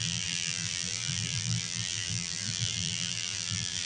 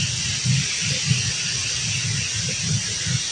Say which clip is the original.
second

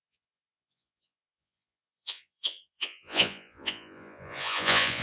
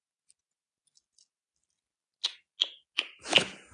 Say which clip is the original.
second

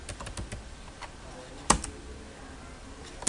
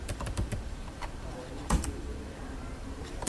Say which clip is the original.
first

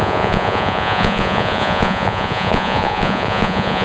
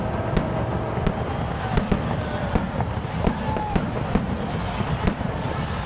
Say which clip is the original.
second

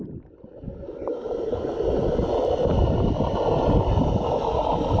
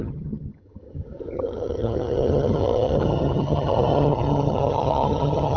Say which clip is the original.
first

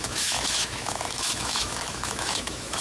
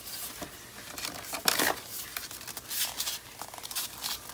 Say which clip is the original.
second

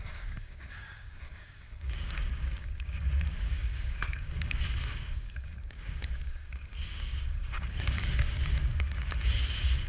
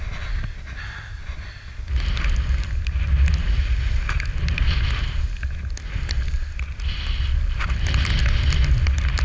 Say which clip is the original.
second